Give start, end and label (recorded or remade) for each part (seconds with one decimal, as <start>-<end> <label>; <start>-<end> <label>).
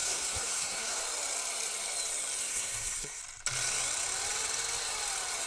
0.0-1.0 remade; 1.0-2.4 recorded; 2.4-3.2 remade; 3.2-5.5 recorded